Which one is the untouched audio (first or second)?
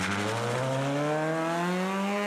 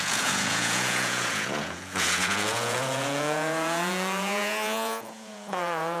first